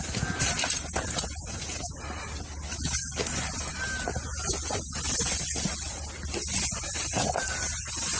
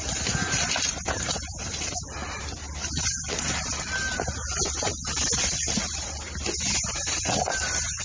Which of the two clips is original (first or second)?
first